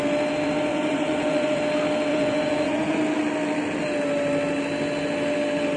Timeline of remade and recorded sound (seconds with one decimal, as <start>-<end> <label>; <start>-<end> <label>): 0.0-0.7 recorded; 0.7-1.6 remade; 1.6-2.1 recorded; 2.1-3.0 remade; 3.0-5.8 recorded